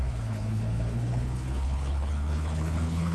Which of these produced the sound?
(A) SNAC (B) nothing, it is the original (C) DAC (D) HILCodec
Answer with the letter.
D